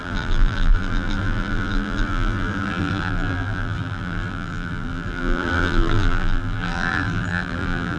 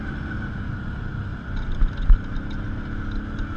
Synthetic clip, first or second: first